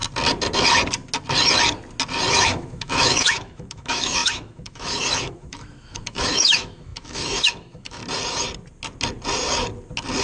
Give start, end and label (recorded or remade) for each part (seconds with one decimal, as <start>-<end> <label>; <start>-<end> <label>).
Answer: 0.0-2.3 recorded; 2.3-8.0 remade; 8.0-10.2 recorded